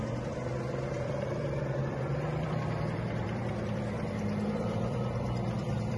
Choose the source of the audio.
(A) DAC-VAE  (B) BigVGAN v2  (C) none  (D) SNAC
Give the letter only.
B